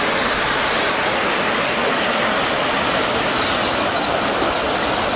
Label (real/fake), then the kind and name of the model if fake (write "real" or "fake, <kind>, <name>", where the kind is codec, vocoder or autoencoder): real